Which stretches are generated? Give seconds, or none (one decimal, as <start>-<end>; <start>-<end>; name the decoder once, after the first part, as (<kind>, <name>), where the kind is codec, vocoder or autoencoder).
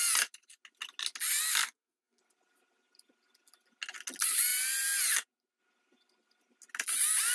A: 1.6-2.2 (codec, SNAC)